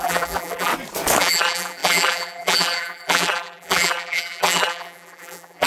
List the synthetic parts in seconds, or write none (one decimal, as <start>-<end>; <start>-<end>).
0.0-0.7; 1.2-5.7